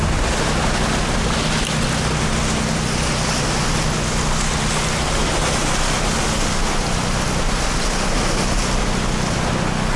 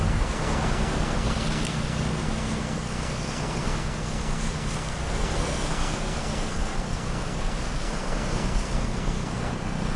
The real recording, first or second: first